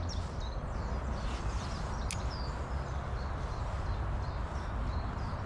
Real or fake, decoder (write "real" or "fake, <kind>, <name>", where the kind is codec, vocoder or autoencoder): real